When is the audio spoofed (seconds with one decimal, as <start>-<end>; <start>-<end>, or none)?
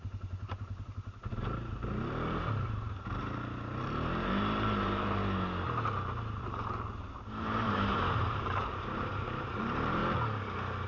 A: 0.0-5.2; 6.4-10.0